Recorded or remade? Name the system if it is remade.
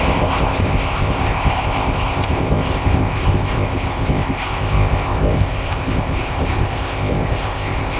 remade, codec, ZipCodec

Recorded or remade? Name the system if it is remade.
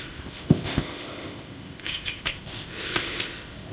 remade, codec, ZipCodec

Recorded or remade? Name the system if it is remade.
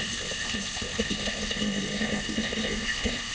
remade, codec, ZipCodec